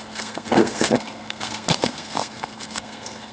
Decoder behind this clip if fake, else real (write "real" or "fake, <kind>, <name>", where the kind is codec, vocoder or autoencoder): fake, codec, SNAC